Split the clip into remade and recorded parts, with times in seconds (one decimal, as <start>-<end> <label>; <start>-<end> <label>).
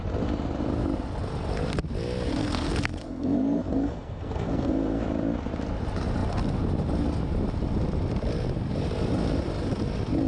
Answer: 0.0-2.4 recorded; 2.4-5.0 remade; 5.0-10.3 recorded